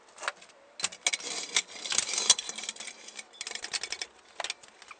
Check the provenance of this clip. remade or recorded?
recorded